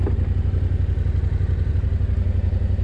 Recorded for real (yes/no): yes